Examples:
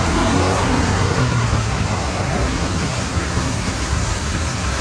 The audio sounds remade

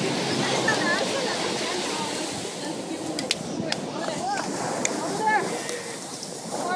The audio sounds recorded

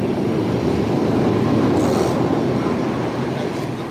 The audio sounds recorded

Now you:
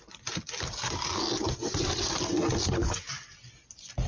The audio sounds recorded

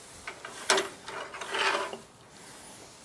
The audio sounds recorded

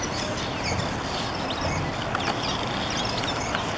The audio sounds recorded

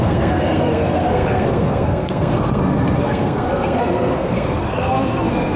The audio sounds remade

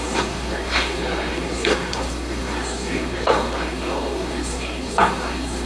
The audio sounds remade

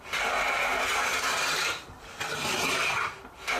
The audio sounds recorded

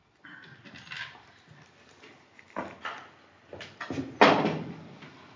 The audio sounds recorded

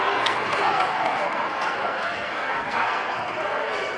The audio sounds remade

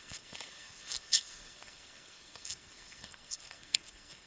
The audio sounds remade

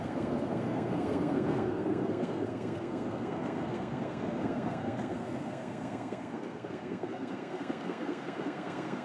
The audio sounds remade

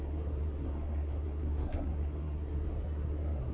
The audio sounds remade